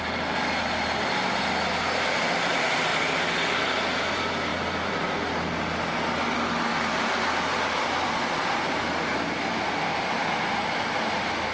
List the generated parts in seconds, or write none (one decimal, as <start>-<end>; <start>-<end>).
none

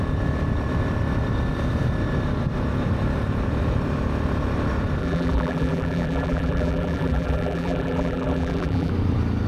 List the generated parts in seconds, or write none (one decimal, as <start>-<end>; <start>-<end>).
5.0-8.9